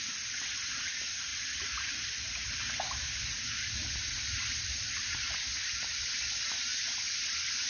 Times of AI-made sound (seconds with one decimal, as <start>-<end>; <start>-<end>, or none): none